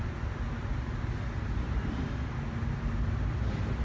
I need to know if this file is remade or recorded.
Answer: recorded